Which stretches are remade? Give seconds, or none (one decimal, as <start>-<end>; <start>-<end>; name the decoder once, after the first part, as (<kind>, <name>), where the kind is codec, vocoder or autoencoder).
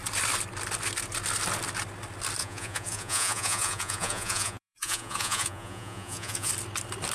2.4-6.5 (vocoder, Vocos)